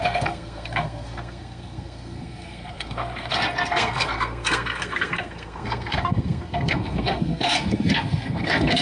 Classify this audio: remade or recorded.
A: remade